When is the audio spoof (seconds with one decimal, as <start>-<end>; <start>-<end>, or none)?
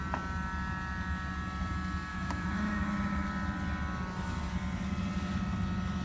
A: 2.1-3.3